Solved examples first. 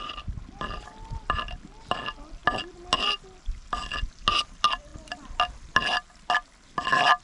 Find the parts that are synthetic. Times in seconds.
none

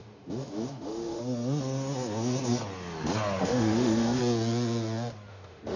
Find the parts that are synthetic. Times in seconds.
0.0-1.2 (autoencoder, DAC-VAE); 3.4-4.2; 5.3-5.8

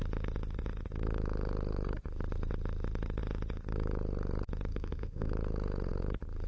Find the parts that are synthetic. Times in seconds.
4.7-5.3 (autoencoder, DAC-VAE)

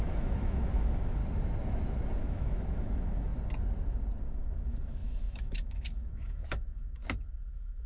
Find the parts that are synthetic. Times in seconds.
0.0-1.2 (autoencoder, DAC-VAE); 2.2-3.3; 4.2-7.0; 7.5-7.9

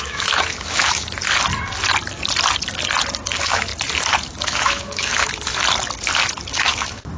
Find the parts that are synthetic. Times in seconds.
0.0-1.2 (autoencoder, DAC-VAE); 3.3-3.7; 4.3-5.5; 6.5-7.2

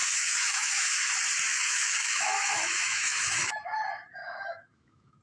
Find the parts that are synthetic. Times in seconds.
0.0-1.1 (autoencoder, DAC-VAE); 1.5-3.8; 4.2-5.2

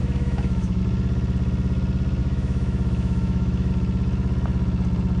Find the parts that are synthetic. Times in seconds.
0.0-0.8 (autoencoder, DAC-VAE); 2.2-3.7

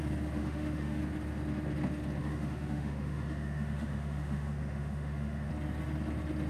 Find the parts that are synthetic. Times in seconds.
0.4-1.0 (autoencoder, DAC-VAE); 2.2-5.5